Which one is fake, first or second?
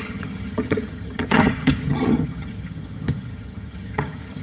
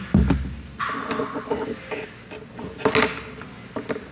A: first